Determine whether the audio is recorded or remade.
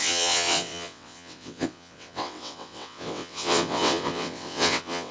remade